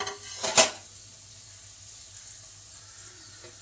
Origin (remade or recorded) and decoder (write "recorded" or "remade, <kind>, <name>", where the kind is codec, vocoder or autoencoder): recorded